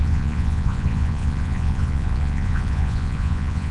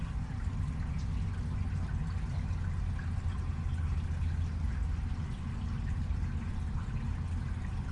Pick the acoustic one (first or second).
second